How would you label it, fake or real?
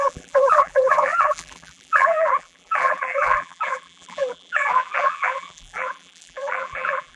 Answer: fake